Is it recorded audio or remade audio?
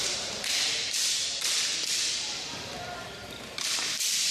remade